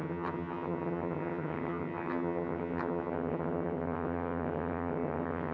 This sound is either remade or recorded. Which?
remade